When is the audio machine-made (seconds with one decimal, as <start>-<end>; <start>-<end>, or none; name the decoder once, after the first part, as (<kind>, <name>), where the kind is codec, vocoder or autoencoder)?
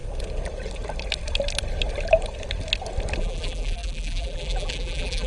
3.2-5.3 (vocoder, BigVGAN v2)